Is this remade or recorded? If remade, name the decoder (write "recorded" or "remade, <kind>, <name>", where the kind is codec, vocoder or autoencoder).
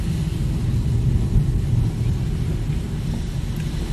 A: recorded